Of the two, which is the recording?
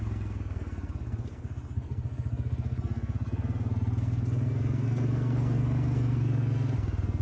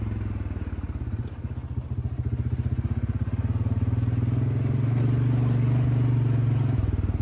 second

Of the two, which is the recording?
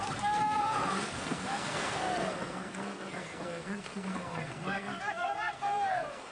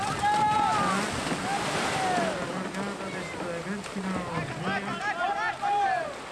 second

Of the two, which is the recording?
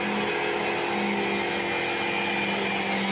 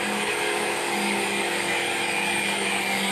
first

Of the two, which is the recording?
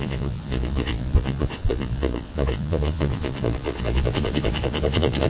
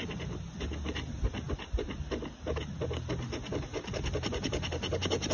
second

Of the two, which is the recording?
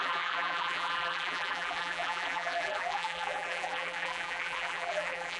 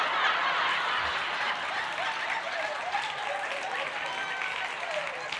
second